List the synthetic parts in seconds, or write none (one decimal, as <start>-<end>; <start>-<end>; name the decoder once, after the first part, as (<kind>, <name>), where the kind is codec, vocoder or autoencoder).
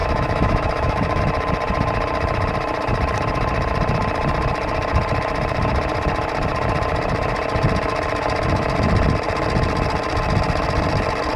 0.0-1.2 (autoencoder, DAC-VAE)